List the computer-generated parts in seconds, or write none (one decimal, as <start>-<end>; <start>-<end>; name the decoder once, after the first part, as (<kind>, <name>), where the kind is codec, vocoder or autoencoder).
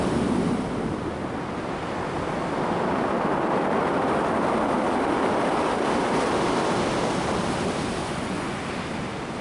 8.0-8.6 (vocoder, Vocos)